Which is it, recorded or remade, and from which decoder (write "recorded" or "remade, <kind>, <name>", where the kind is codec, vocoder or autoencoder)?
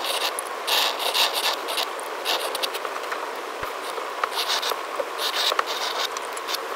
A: recorded